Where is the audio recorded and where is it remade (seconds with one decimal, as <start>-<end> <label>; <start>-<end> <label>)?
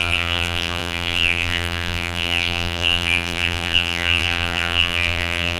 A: 0.0-5.6 remade